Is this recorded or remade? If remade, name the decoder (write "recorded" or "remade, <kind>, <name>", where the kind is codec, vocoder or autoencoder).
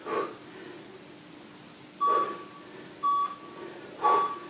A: recorded